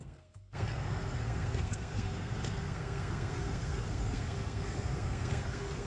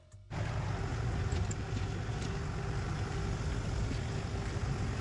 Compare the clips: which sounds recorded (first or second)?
second